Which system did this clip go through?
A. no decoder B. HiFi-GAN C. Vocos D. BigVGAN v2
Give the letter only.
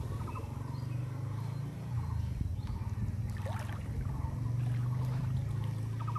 A